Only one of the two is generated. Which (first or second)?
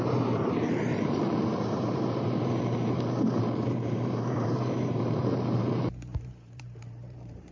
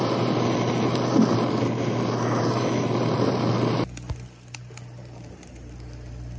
first